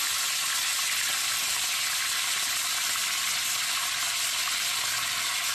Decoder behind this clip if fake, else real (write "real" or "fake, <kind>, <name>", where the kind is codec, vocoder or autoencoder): real